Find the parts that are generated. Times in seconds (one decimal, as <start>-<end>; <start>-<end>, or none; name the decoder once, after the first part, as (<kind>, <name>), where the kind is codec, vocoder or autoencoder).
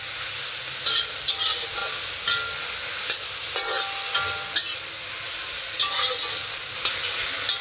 none